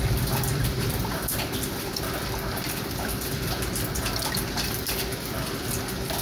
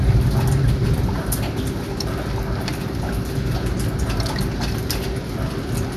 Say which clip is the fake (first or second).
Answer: first